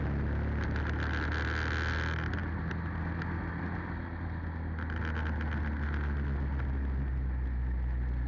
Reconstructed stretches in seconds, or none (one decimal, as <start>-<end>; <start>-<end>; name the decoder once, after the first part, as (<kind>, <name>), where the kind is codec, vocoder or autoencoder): none